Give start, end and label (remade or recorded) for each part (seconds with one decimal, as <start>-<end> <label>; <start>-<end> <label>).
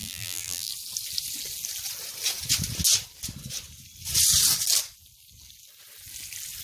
0.0-0.7 remade; 0.7-6.6 recorded